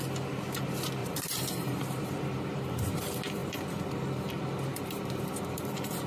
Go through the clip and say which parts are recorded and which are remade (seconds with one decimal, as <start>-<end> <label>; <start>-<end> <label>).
0.0-1.0 recorded; 1.0-3.0 remade; 3.0-3.4 recorded; 3.4-4.3 remade; 4.3-4.7 recorded; 4.7-6.1 remade